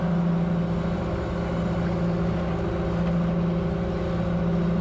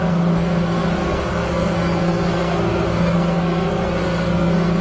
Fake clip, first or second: second